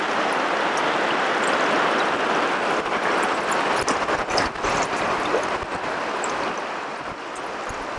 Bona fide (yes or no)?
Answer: yes